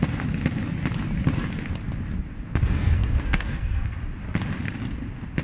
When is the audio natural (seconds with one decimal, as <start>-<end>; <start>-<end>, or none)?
0.0-2.6; 4.0-5.4